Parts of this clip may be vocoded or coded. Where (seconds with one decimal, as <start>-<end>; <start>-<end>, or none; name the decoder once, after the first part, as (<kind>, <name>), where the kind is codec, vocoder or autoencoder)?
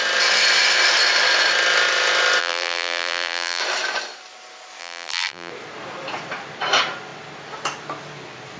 2.4-3.6 (vocoder, BigVGAN v2); 4.8-5.5